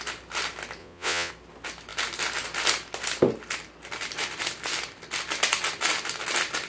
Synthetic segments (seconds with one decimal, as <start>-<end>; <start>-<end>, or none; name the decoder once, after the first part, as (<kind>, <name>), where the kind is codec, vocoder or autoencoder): 0.8-1.3 (vocoder, Vocos)